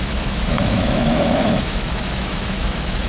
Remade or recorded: remade